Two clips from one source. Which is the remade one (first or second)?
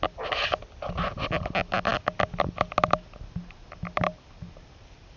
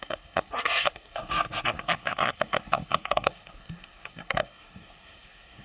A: second